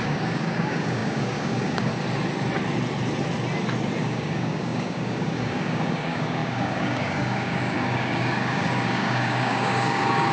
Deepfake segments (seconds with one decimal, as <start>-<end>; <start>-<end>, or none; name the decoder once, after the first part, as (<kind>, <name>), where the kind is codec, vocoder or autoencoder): 0.0-1.9 (codec, DAC); 4.0-10.3